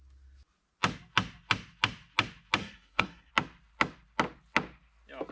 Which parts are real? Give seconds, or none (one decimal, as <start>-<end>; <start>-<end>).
0.0-2.6; 3.3-5.3